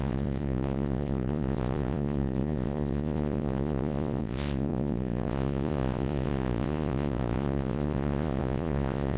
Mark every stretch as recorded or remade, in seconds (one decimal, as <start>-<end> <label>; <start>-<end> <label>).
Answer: 0.0-9.2 remade